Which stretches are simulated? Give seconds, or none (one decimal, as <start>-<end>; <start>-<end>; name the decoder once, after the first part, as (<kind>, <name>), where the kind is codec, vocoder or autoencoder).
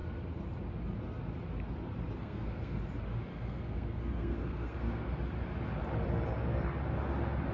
2.2-2.8 (codec, SNAC); 3.3-5.1